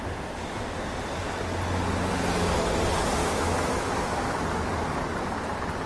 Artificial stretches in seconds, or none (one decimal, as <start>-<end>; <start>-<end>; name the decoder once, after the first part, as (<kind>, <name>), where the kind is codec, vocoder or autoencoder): 3.2-4.4 (autoencoder, DAC-VAE)